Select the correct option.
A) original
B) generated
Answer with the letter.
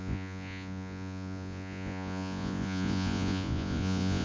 B